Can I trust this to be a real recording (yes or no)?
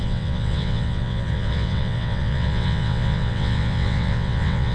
no